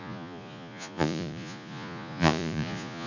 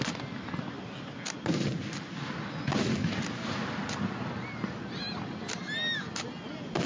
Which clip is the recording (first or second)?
second